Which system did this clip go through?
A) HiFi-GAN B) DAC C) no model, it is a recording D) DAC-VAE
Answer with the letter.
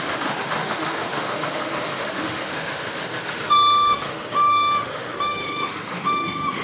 D